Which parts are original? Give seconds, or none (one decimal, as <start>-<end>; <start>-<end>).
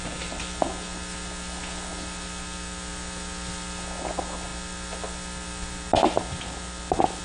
0.0-7.2